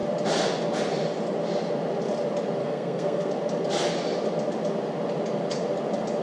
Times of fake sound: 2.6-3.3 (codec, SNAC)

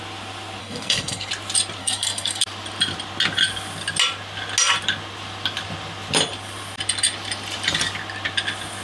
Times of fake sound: 0.6-1.3 (codec, SNAC); 1.8-2.4